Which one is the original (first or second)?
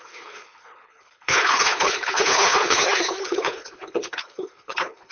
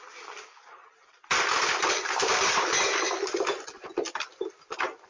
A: second